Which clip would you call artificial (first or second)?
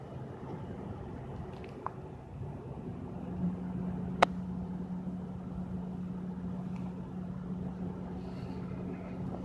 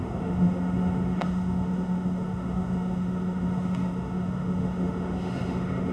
second